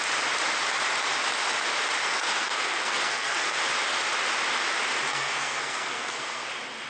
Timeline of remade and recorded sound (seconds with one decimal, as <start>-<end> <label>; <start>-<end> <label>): 0.0-2.0 recorded; 2.0-3.6 remade; 3.6-5.1 recorded; 5.1-6.5 remade; 6.5-6.9 recorded